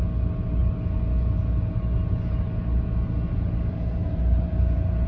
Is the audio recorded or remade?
recorded